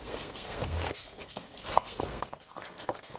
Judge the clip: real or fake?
fake